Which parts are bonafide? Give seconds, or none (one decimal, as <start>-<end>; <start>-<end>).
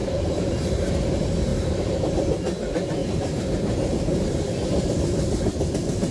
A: 0.9-1.5; 2.0-3.0; 4.2-6.1